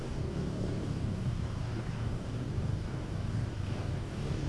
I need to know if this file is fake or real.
fake